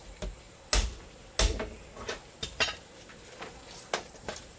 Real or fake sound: real